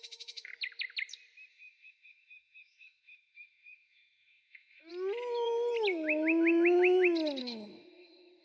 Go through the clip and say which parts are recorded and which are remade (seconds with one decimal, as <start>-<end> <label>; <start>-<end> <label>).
0.0-0.5 remade; 0.5-1.5 recorded; 1.5-4.9 remade; 4.9-7.4 recorded; 7.4-8.4 remade